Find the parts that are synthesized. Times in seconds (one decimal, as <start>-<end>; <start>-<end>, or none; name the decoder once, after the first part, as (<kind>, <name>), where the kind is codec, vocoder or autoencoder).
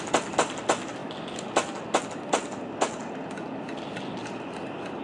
none